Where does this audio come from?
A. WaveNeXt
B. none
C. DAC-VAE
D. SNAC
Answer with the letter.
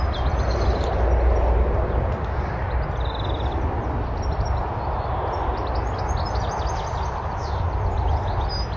B